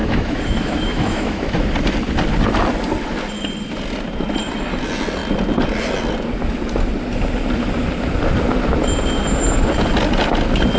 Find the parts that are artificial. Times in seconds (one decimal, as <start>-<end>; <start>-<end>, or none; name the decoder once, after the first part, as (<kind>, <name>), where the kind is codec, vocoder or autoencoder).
0.0-1.6 (autoencoder, DAC-VAE)